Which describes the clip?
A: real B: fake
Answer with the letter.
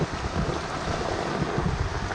A